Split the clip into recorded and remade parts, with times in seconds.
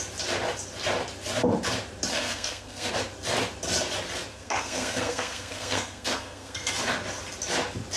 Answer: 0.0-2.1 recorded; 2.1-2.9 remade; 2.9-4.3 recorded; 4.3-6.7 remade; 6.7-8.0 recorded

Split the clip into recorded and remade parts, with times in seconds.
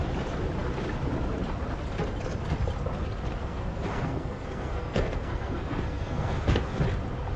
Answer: 0.0-3.4 recorded; 3.4-6.8 remade; 6.8-7.4 recorded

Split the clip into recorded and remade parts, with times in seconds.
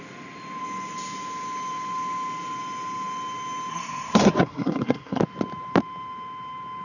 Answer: 0.0-3.7 recorded; 3.7-5.2 remade; 5.2-6.8 recorded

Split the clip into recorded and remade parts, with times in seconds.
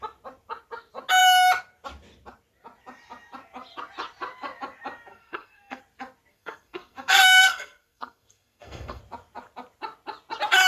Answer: 0.0-5.1 recorded; 5.1-5.8 remade; 5.8-6.3 recorded; 6.3-9.0 remade; 9.0-10.7 recorded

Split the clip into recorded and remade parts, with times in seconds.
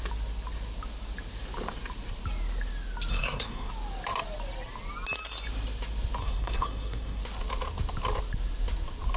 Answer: 0.0-3.1 recorded; 3.1-3.7 remade; 3.7-6.2 recorded; 6.2-7.2 remade; 7.2-9.2 recorded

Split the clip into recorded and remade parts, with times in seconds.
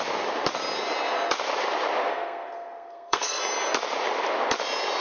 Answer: 0.0-2.1 recorded; 2.1-3.4 remade; 3.4-5.0 recorded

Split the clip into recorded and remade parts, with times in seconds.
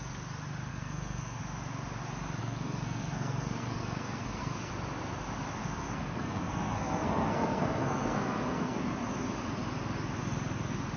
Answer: 0.0-0.7 recorded; 0.7-1.4 remade; 1.4-2.4 recorded; 2.4-4.7 remade; 4.7-5.6 recorded; 5.6-8.8 remade; 8.8-11.0 recorded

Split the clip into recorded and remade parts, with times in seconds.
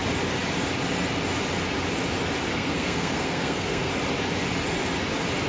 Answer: 0.0-2.5 recorded; 2.5-3.9 remade; 3.9-5.5 recorded